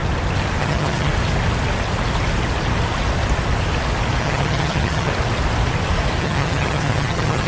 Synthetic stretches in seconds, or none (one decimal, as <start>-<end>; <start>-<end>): 0.6-1.1; 4.2-5.1; 6.2-7.5